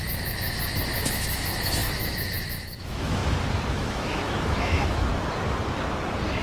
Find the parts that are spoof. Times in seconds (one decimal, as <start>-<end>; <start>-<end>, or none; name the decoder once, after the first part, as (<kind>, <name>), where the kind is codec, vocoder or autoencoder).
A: 0.0-3.2 (autoencoder, DAC-VAE); 3.7-5.1